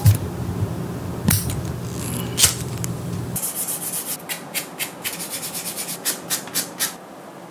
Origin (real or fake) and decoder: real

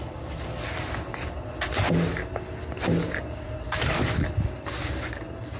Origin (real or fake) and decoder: real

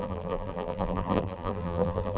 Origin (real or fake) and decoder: fake, vocoder, BigVGAN v2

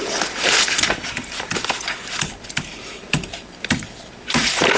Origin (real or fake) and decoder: fake, vocoder, BigVGAN v2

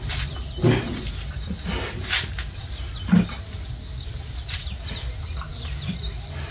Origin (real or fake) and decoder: real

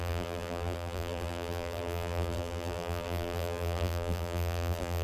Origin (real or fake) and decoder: fake, vocoder, BigVGAN v2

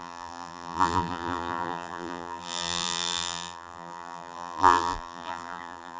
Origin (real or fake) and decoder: fake, vocoder, BigVGAN v2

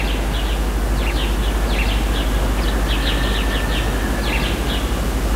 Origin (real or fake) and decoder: real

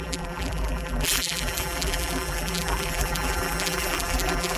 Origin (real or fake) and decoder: fake, vocoder, BigVGAN v2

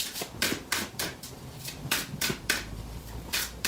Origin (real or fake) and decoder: fake, vocoder, BigVGAN v2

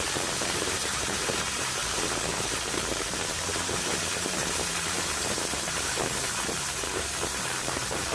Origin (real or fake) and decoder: fake, vocoder, BigVGAN v2